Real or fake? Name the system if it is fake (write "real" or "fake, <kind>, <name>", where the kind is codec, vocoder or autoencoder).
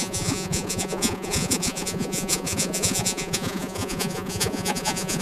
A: fake, vocoder, Vocos